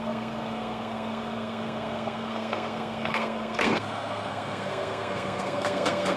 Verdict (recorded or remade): remade